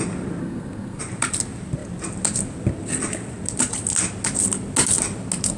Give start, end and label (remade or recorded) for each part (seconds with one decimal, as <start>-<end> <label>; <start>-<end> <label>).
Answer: 0.0-0.4 recorded; 0.4-1.0 remade; 1.0-5.6 recorded